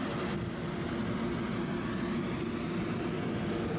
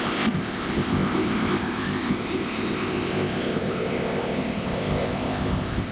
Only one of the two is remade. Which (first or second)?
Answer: second